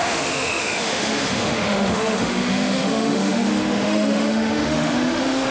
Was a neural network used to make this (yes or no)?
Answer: yes